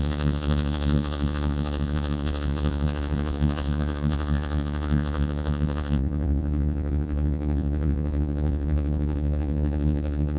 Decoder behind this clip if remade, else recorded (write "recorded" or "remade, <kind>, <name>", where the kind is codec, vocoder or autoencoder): remade, vocoder, Vocos